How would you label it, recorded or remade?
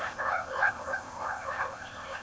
remade